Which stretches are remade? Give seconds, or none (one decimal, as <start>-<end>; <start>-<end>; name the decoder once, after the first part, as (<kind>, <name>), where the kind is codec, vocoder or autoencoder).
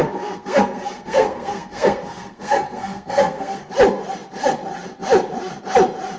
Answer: 0.0-3.7 (codec, SNAC)